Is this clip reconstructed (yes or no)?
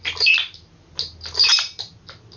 no